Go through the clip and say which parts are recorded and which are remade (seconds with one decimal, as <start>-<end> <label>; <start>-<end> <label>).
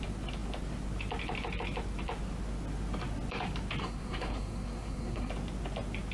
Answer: 0.0-3.8 recorded; 3.8-5.3 remade; 5.3-6.1 recorded